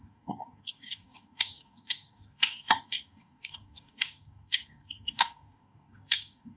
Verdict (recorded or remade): remade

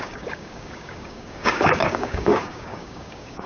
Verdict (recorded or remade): remade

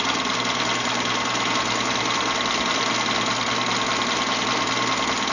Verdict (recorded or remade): recorded